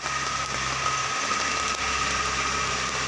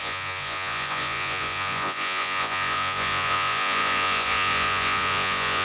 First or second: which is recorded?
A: first